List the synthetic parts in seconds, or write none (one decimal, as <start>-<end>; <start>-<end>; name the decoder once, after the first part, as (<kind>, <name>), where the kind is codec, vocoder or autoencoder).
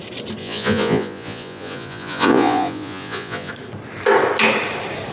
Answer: 0.4-3.5 (vocoder, Vocos)